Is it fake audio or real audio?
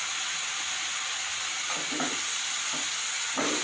real